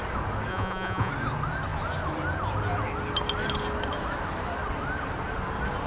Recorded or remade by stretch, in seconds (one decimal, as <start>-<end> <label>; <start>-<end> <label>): 0.0-0.5 recorded; 0.5-1.1 remade; 1.1-5.9 recorded